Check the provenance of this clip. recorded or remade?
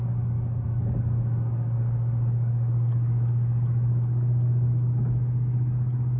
remade